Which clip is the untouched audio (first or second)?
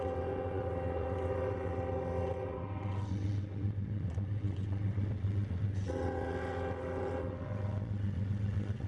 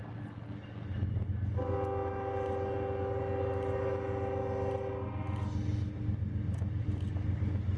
second